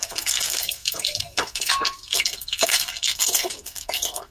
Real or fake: fake